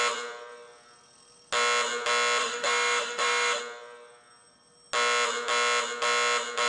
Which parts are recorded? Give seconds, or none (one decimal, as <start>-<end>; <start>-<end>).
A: 0.0-2.4; 3.6-6.7

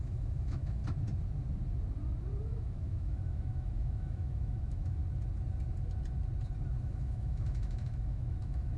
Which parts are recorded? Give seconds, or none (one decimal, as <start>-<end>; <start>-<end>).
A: 0.8-2.4; 5.0-6.8

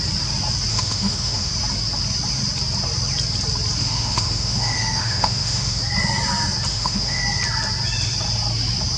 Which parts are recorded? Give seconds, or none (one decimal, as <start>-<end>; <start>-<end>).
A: 0.0-0.7; 1.5-3.8; 5.8-6.7; 7.2-9.0

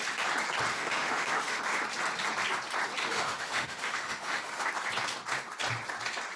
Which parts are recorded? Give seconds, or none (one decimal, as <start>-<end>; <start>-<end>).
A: 0.0-0.7; 1.6-3.0; 4.7-6.4

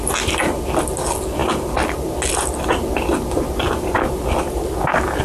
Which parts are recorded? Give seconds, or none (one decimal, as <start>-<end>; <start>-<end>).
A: 0.0-5.2

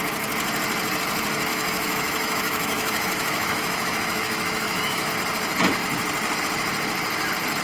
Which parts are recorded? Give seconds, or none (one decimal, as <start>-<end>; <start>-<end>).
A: 0.0-1.5; 5.1-7.6

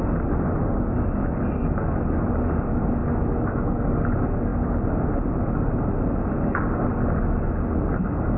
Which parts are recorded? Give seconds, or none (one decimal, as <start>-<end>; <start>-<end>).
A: 0.0-3.0; 3.7-8.4

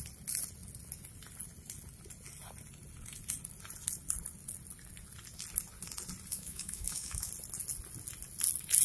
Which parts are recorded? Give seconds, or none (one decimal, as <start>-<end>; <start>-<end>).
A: 0.0-6.3; 7.3-8.8